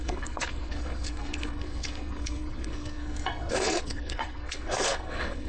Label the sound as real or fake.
fake